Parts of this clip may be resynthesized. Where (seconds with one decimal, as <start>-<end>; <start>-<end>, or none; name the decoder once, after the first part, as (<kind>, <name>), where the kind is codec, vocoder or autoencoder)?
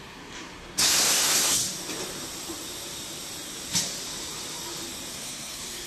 0.0-1.6 (codec, SNAC); 5.1-5.9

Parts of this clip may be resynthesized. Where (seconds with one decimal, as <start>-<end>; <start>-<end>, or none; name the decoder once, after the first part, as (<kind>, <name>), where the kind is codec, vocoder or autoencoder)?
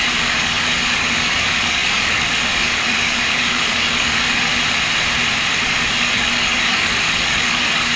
0.0-4.5 (codec, DAC); 5.5-8.0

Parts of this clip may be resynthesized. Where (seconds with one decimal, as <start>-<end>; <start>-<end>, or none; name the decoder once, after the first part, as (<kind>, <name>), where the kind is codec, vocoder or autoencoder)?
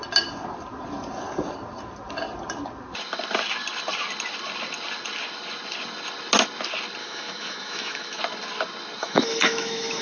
7.0-8.2 (autoencoder, DAC-VAE); 9.0-10.0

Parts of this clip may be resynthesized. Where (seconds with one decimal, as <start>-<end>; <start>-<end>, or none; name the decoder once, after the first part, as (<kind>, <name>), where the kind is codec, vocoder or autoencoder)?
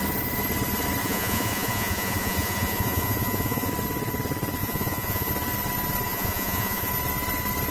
1.0-3.7 (vocoder, Vocos); 4.6-5.3; 6.1-6.9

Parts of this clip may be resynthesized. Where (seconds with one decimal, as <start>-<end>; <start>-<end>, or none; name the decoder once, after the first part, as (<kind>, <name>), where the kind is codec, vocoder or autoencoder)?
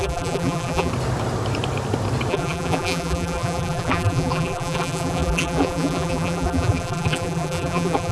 0.0-0.9 (vocoder, BigVGAN v2); 2.3-8.1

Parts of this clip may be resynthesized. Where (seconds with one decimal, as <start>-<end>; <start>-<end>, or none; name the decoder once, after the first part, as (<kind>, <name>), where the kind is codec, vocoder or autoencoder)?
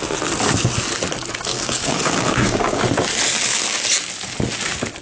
1.5-2.8 (codec, DAC)